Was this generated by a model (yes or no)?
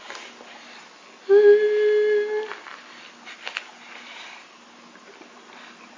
no